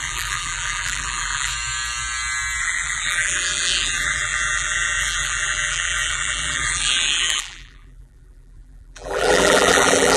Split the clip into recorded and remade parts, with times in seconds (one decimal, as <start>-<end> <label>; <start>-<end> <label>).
0.0-1.5 remade; 1.5-2.6 recorded; 2.6-10.2 remade